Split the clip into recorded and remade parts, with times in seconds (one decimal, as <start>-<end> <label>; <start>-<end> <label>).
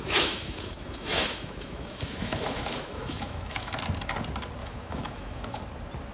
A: 0.0-3.7 remade; 3.7-4.6 recorded; 4.6-5.6 remade; 5.6-6.1 recorded